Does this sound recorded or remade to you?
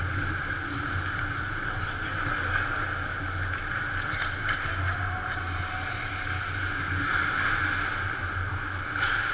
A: recorded